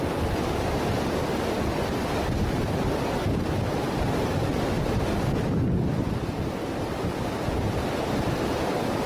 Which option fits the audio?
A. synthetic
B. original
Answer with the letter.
A